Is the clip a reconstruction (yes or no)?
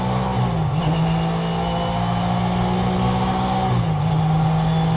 no